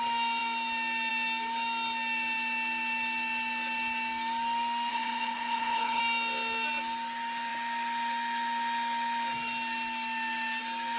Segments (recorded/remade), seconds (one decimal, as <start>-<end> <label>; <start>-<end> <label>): 0.0-4.9 recorded; 4.9-6.0 remade; 6.0-11.0 recorded